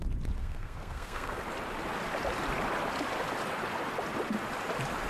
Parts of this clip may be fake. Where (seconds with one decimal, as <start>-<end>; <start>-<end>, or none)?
0.4-1.4